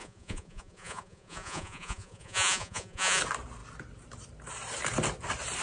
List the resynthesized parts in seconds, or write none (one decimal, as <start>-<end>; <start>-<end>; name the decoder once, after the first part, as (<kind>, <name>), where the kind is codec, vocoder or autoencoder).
0.0-3.2 (vocoder, Vocos)